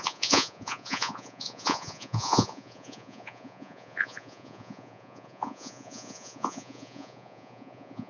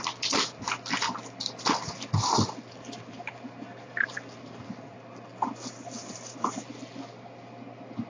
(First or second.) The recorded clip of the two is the second